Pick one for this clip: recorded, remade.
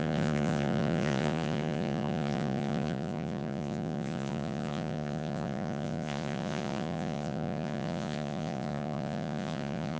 remade